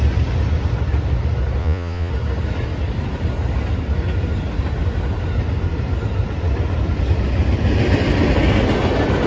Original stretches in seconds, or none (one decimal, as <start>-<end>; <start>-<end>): 0.0-1.6; 2.1-9.3